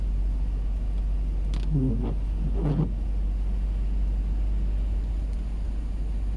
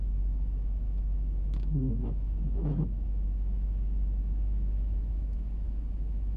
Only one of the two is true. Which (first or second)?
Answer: first